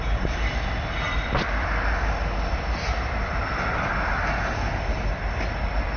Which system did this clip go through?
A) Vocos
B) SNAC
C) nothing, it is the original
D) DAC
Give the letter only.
C